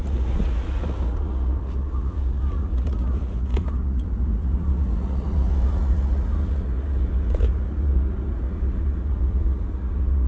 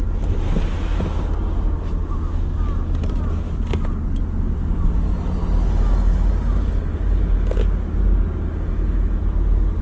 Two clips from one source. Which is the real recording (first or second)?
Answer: second